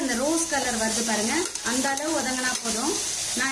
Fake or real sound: real